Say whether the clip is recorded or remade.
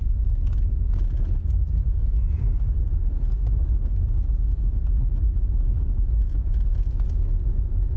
recorded